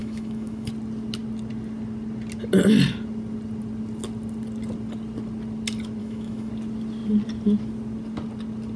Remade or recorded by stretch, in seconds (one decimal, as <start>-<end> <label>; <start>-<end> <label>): 0.0-0.7 remade; 0.7-6.0 recorded; 6.0-6.5 remade; 6.5-8.8 recorded